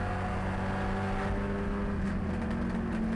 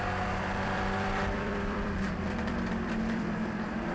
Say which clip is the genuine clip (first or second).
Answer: first